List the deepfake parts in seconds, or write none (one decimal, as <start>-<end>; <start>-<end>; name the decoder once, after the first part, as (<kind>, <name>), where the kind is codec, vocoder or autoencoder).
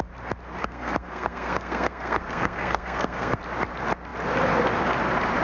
0.6-3.4 (codec, SNAC)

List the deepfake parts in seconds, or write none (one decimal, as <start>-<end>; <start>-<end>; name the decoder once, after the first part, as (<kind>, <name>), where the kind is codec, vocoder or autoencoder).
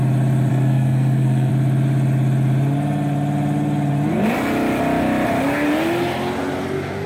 0.5-1.5 (codec, SNAC)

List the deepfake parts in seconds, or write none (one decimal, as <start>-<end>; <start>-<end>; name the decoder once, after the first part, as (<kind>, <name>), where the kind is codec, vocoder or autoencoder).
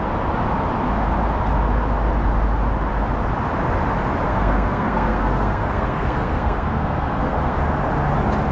4.3-7.6 (codec, SNAC)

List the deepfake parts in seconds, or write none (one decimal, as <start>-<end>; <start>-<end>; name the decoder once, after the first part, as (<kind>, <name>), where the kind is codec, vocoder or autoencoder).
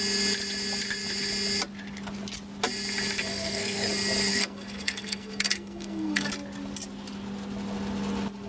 3.3-3.9 (codec, SNAC); 4.3-6.3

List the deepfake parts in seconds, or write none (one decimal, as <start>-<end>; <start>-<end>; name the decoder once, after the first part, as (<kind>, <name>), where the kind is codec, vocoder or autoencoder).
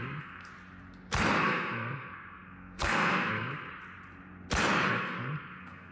0.0-0.5 (codec, SNAC); 1.4-3.7; 4.9-5.9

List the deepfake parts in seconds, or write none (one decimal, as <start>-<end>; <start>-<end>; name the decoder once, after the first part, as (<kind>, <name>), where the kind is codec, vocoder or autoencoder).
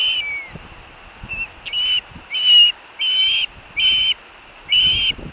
none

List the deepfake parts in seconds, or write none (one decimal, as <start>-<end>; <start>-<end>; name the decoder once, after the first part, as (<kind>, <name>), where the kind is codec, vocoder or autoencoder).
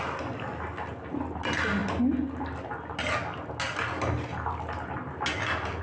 none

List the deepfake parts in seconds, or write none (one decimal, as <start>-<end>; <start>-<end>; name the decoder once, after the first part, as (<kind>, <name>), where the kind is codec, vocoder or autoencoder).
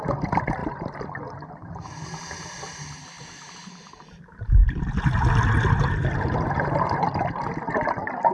none